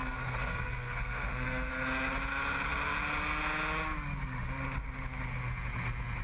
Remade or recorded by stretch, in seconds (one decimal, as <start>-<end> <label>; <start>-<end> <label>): 0.0-1.7 remade; 1.7-6.2 recorded